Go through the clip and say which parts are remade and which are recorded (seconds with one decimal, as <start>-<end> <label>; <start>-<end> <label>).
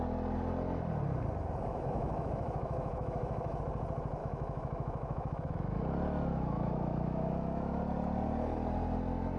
0.0-1.7 recorded; 1.7-3.6 remade; 3.6-4.2 recorded; 4.2-5.8 remade; 5.8-6.3 recorded; 6.3-7.8 remade; 7.8-9.4 recorded